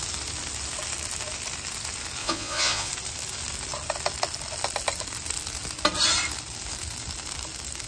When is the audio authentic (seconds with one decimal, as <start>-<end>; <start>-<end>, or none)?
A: 0.0-2.2; 2.9-7.9